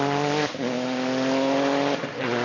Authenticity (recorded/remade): recorded